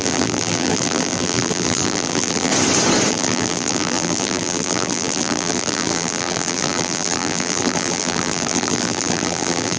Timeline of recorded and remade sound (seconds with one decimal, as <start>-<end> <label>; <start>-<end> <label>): 0.0-2.5 remade; 2.5-3.1 recorded; 3.1-9.8 remade